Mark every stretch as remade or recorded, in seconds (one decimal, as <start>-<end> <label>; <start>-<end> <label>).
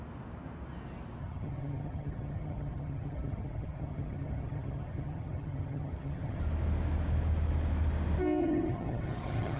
0.0-1.2 recorded; 1.2-6.4 remade; 6.4-8.4 recorded; 8.4-9.6 remade